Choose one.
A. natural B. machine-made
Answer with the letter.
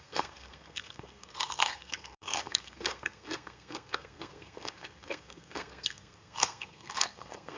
B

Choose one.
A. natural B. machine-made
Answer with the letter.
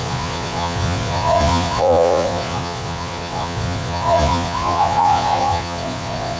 B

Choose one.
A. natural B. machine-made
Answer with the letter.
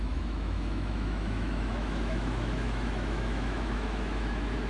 B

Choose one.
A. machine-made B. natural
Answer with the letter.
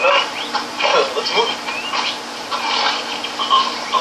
B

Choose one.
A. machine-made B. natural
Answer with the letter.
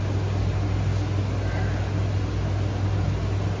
B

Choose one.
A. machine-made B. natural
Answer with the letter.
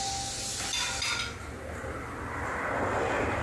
B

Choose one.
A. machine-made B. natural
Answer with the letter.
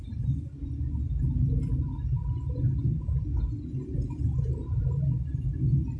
B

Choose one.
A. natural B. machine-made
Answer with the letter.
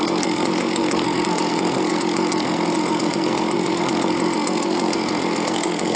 B